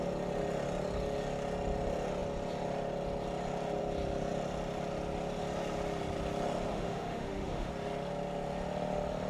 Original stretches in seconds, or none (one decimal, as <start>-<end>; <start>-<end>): 0.0-6.7; 7.7-9.3